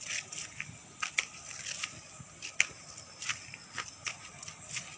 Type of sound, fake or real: real